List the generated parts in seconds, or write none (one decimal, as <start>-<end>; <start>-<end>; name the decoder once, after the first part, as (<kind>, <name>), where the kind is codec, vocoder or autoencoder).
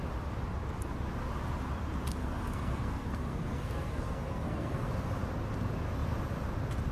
2.2-4.9 (codec, SNAC)